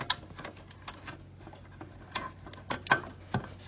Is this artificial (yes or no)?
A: no